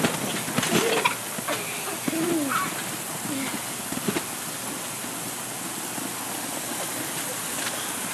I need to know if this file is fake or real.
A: real